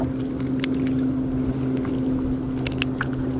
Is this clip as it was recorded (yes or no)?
yes